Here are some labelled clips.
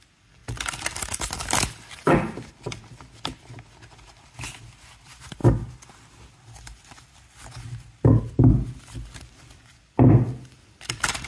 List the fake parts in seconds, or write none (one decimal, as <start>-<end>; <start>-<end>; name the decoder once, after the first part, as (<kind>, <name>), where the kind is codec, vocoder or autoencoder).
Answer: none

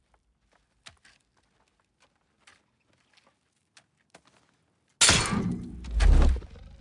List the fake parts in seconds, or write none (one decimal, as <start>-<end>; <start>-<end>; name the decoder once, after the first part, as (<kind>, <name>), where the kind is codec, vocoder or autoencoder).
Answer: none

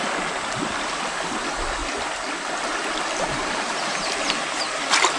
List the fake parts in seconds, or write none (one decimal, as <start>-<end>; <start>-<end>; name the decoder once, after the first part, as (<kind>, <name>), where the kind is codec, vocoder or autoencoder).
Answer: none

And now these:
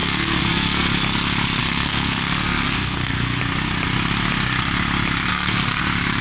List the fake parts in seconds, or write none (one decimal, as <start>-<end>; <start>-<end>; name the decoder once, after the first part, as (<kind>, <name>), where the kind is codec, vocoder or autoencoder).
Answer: 0.0-0.9 (codec, SNAC); 1.6-3.4; 5.3-5.8

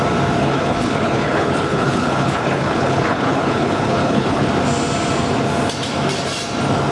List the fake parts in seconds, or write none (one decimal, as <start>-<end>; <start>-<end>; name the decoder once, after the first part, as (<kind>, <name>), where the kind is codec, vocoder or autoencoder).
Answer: 0.4-4.5 (codec, HILCodec)

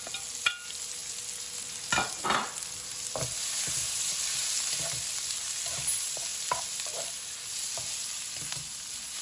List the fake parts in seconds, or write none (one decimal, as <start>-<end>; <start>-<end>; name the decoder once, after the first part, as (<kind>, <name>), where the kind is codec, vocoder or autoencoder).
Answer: none